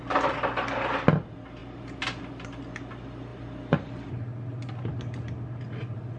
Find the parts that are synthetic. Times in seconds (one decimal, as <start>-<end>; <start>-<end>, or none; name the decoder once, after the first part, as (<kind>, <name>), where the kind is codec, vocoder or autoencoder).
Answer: 3.3-4.1 (vocoder, BigVGAN v2)